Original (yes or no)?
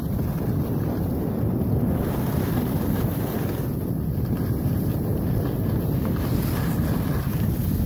yes